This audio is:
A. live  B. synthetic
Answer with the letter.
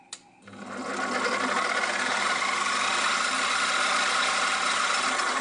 A